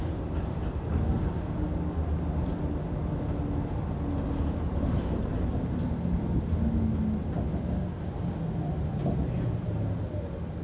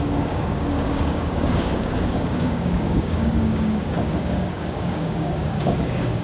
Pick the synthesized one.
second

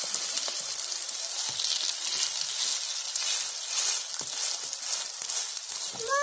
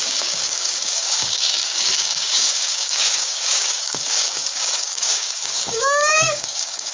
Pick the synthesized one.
second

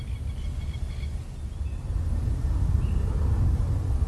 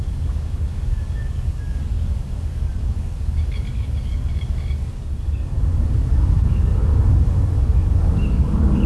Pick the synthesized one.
second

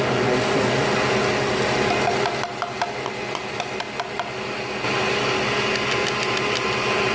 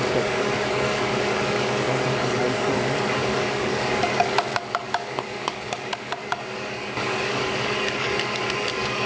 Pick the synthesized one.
second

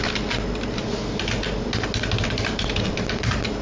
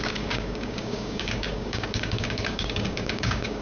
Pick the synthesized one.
second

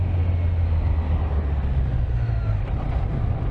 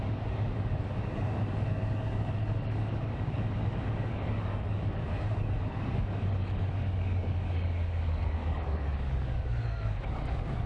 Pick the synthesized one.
second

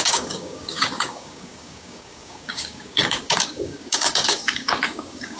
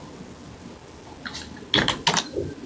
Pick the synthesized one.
first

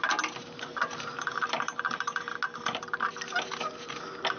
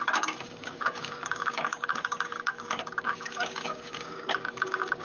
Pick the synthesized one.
second